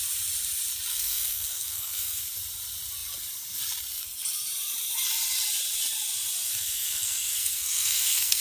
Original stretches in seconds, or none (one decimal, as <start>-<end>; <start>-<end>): 0.0-0.9; 2.2-6.4